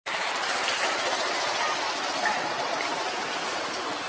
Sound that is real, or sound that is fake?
real